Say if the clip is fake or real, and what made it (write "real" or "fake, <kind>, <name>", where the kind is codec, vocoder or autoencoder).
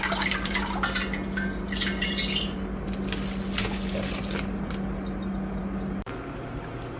real